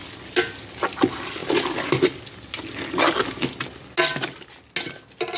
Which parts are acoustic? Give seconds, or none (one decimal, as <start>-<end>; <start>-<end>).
0.6-5.4